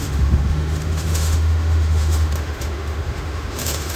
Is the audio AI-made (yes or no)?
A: yes